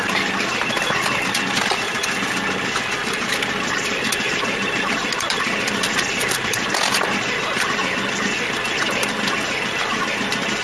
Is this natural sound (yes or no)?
yes